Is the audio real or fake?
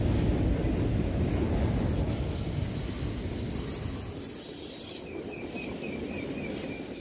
real